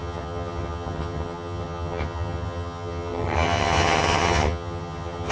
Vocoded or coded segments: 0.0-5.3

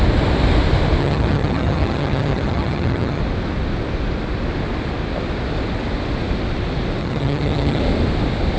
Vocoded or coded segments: 1.0-3.2; 7.0-7.8

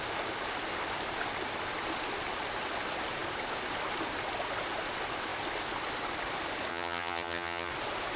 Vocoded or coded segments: 6.7-7.7

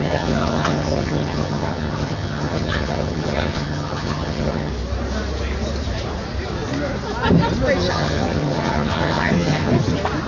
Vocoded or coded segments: 0.0-4.7; 7.9-9.7

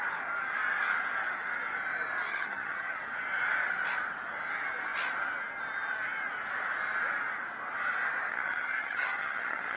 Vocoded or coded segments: 2.3-3.0; 8.3-9.8